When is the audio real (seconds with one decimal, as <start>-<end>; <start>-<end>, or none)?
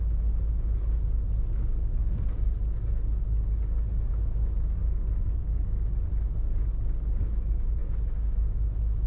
0.0-2.0; 2.6-7.8; 8.7-9.1